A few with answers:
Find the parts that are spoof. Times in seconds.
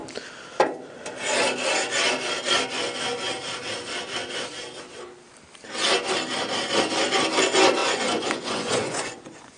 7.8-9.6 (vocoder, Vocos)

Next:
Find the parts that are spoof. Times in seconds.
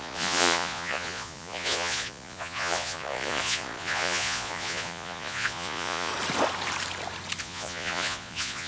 0.0-6.1 (vocoder, Vocos); 7.4-8.7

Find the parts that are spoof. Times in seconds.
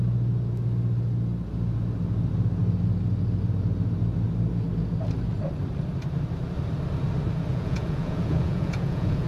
7.5-9.3 (vocoder, Vocos)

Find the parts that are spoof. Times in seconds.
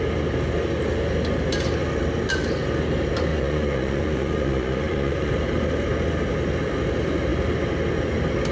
3.3-5.3 (vocoder, Vocos)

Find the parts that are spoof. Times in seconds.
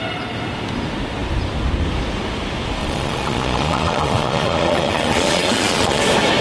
2.8-6.0 (vocoder, Vocos)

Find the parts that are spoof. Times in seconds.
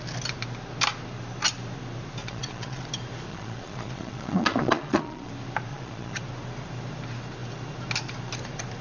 2.2-2.8 (vocoder, Vocos); 3.3-5.3; 5.7-6.2